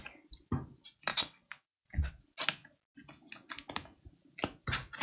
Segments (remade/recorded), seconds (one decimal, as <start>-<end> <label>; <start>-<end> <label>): 0.0-1.1 recorded; 1.1-2.1 remade; 2.1-5.0 recorded